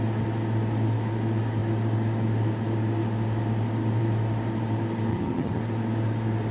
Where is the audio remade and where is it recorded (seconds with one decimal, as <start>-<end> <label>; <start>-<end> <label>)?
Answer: 0.0-5.1 recorded; 5.1-5.6 remade; 5.6-6.5 recorded